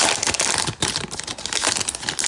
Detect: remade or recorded recorded